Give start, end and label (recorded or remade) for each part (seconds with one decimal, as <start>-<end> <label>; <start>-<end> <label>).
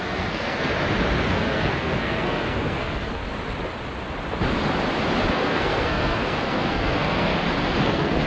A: 0.0-0.7 remade; 0.7-1.3 recorded; 1.3-3.2 remade; 3.2-5.3 recorded; 5.3-7.3 remade; 7.3-7.8 recorded; 7.8-8.3 remade